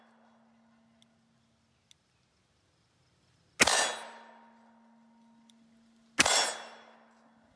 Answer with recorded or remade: recorded